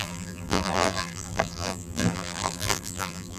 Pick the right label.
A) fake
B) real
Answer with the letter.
A